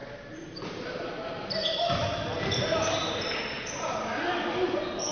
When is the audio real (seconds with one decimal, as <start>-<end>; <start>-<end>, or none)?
0.0-5.1